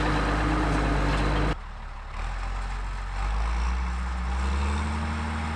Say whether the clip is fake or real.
real